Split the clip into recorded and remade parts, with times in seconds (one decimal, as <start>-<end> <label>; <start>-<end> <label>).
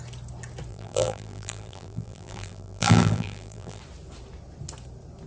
0.0-0.7 recorded; 0.7-3.8 remade; 3.8-5.3 recorded